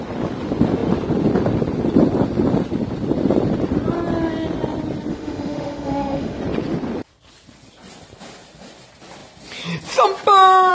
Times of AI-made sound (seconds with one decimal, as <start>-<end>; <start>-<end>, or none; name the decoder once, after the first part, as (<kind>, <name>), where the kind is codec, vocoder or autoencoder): 5.1-6.4 (autoencoder, DAC-VAE)